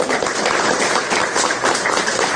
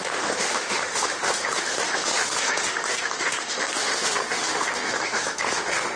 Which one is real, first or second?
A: first